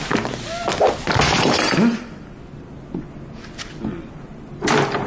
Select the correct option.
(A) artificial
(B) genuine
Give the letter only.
B